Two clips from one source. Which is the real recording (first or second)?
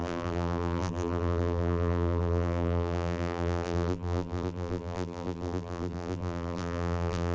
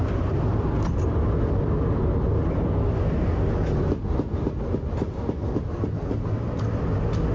second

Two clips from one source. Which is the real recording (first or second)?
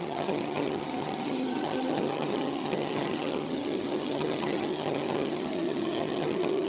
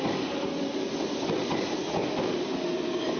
second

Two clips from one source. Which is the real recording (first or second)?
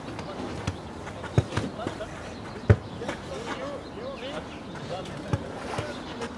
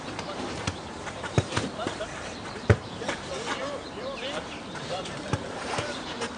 first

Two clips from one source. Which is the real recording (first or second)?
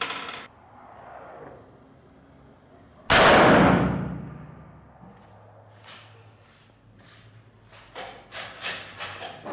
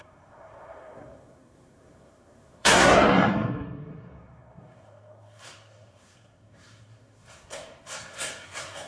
first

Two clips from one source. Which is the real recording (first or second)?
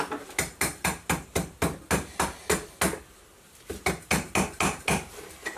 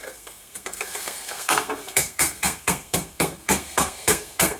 first